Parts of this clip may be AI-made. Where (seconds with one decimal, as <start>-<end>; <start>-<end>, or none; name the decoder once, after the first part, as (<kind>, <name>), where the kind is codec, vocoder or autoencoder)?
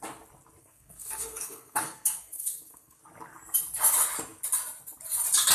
0.6-3.0 (codec, SNAC)